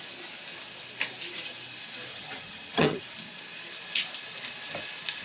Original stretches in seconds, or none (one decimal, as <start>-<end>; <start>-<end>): 0.0-2.1; 3.0-5.2